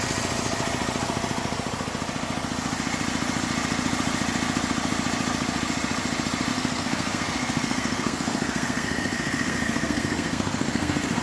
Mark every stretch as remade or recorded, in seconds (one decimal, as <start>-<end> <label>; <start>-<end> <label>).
0.0-6.5 recorded; 6.5-11.2 remade